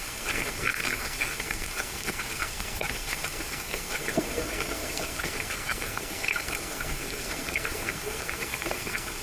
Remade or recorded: remade